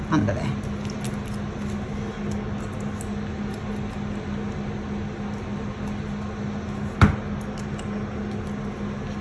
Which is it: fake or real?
real